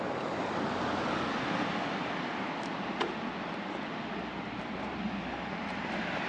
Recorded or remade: recorded